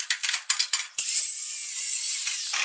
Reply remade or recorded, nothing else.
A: remade